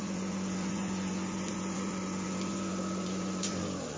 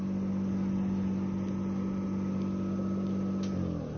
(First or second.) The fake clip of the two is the first